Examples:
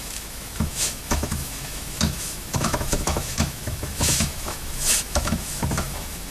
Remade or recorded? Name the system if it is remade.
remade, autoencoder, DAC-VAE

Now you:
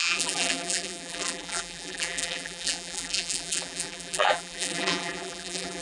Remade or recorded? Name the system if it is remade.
remade, vocoder, BigVGAN v2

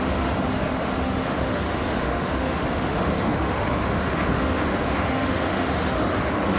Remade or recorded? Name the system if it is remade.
remade, autoencoder, DAC-VAE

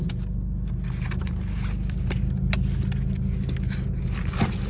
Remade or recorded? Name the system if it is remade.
recorded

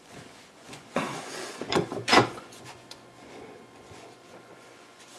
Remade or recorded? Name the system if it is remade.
remade, vocoder, Vocos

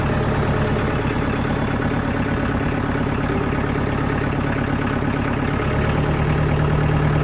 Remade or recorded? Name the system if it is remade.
recorded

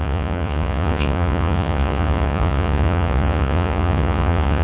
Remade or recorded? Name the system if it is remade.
remade, vocoder, Vocos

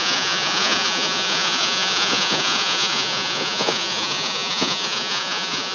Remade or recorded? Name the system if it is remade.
remade, vocoder, Vocos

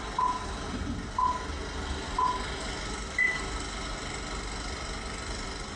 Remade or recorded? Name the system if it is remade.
recorded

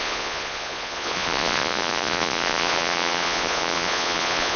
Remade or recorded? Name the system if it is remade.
remade, vocoder, Vocos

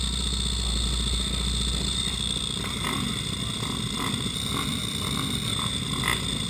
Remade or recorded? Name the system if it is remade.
recorded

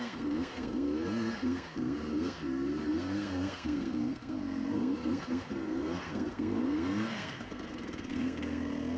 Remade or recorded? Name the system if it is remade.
remade, codec, SNAC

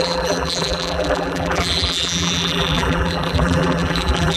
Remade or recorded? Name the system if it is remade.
remade, vocoder, BigVGAN v2